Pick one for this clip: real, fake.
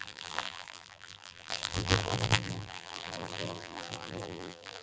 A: fake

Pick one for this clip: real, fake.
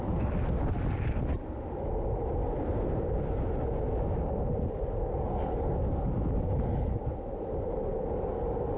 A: real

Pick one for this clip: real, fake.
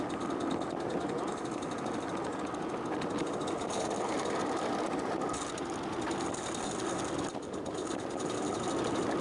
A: real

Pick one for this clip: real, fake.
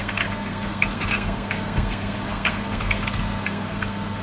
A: fake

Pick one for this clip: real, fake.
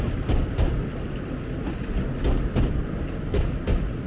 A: real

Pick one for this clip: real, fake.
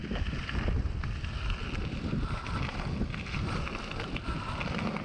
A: real